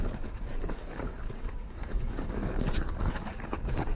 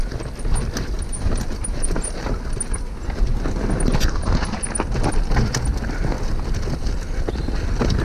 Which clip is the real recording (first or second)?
second